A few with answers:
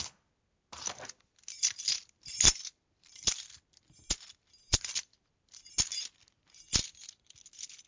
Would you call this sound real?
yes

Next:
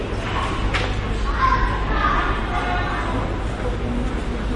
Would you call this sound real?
yes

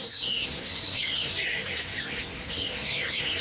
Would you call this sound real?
no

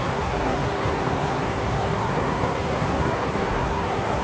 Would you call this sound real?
no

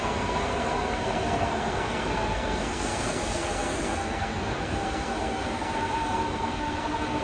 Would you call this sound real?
no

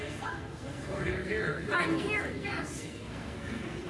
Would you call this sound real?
no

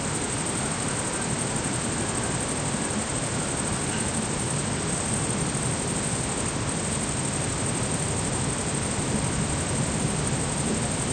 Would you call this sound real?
yes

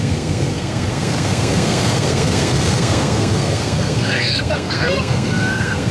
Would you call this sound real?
no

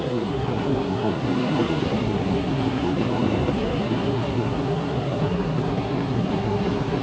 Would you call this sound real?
no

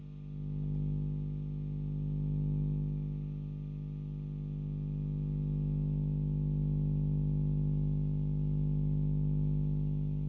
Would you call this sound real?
yes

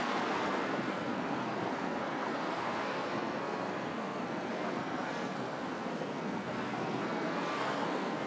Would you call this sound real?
no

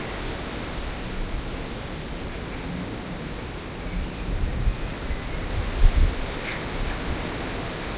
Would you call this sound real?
yes